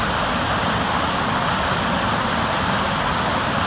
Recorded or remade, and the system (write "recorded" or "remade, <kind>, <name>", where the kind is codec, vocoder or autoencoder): recorded